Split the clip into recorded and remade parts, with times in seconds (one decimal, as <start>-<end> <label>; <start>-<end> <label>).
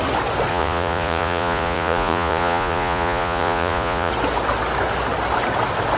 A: 0.0-0.5 recorded; 0.5-4.1 remade; 4.1-6.0 recorded